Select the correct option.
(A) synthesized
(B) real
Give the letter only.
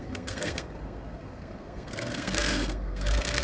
A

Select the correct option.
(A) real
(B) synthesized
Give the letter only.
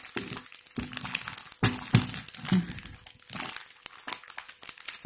A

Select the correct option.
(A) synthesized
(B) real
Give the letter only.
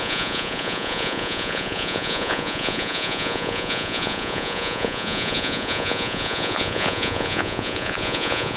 A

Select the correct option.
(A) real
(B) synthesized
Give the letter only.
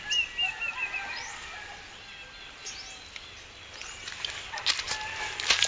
A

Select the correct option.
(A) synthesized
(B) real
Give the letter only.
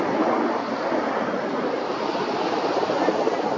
B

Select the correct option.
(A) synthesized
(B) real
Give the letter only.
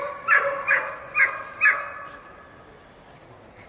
B